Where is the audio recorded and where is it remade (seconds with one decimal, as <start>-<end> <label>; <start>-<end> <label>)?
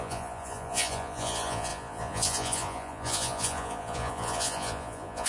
0.0-5.3 remade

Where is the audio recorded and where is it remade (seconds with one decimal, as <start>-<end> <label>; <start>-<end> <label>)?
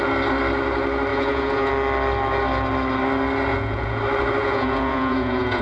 0.0-1.1 recorded; 1.1-1.7 remade; 1.7-3.5 recorded; 3.5-4.0 remade; 4.0-4.4 recorded; 4.4-5.6 remade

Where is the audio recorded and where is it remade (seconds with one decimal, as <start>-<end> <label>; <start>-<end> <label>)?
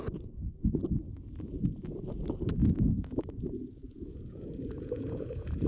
0.0-2.6 recorded; 2.6-5.7 remade